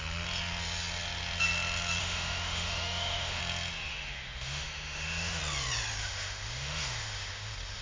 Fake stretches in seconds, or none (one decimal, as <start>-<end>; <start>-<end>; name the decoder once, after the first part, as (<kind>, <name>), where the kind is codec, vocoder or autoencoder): 2.0-3.4 (autoencoder, DAC-VAE); 3.9-5.4; 6.0-7.8